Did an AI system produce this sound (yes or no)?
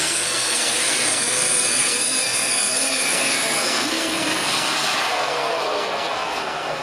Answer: yes